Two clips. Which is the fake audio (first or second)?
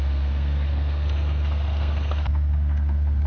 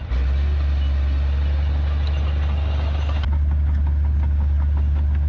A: first